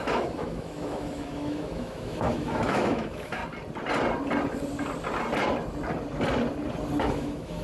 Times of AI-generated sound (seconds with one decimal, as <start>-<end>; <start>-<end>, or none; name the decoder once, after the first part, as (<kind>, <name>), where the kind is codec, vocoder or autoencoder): 0.0-3.4 (autoencoder, DAC-VAE); 7.0-7.6